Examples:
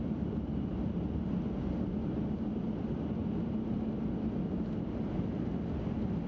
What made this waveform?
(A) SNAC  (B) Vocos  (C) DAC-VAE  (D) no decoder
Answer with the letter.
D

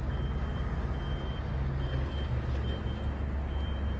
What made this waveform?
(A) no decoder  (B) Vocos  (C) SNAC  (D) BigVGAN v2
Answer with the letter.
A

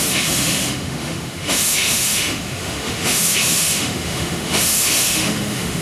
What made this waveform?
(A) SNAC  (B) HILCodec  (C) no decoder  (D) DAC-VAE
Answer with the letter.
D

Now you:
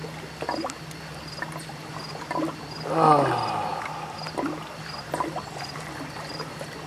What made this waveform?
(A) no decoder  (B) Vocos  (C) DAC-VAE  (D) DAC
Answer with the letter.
A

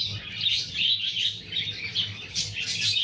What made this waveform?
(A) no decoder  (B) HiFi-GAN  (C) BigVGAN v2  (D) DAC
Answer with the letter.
A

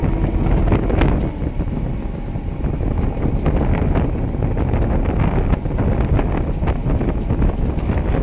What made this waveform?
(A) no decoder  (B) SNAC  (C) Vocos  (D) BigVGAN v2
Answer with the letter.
A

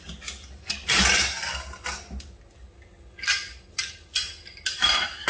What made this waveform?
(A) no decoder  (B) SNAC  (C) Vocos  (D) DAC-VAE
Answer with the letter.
A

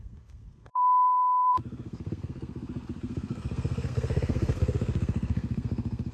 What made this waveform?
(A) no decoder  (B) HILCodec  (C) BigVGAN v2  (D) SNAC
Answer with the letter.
D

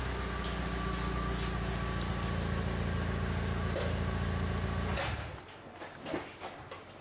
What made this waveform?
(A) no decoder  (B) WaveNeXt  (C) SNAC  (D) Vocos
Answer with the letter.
A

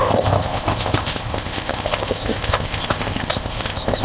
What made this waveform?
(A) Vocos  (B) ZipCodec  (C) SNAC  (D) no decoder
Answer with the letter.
B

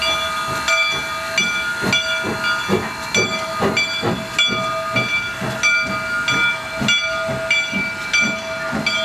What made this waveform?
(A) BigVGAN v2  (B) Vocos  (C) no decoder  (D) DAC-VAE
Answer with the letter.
C